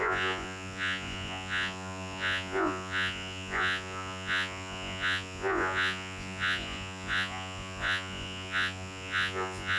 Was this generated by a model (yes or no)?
yes